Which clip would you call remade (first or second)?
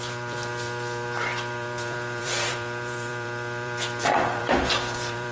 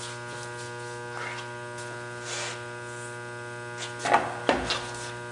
first